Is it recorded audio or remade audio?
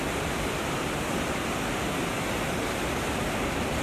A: recorded